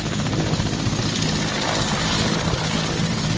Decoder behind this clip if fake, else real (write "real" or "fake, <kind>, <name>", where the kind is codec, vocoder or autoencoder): real